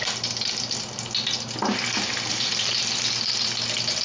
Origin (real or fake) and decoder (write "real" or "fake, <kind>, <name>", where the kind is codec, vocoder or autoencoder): real